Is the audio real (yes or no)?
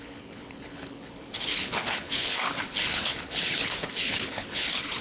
no